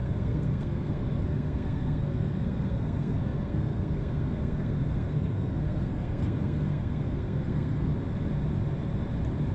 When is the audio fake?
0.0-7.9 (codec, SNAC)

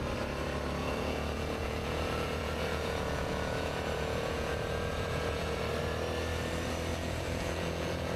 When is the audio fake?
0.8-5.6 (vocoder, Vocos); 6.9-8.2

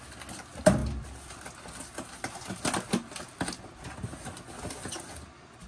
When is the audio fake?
none

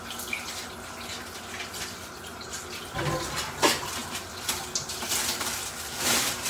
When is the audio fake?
none

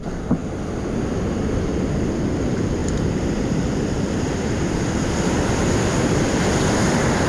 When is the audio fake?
2.8-7.3 (vocoder, BigVGAN v2)

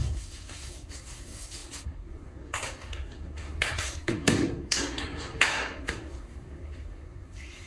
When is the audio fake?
0.0-7.7 (codec, SNAC)